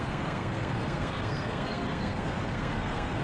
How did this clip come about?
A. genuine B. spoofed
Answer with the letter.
B